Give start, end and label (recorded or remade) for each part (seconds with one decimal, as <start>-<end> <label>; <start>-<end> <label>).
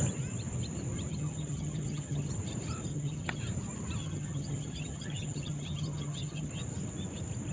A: 0.0-1.1 recorded; 1.1-2.3 remade; 2.3-2.9 recorded; 2.9-3.4 remade; 3.4-4.0 recorded; 4.0-6.5 remade; 6.5-7.5 recorded